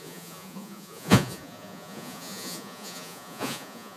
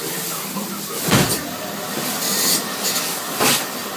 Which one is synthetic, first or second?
first